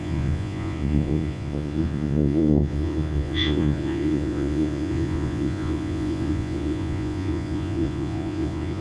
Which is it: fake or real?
fake